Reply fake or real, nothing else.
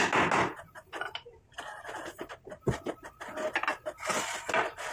real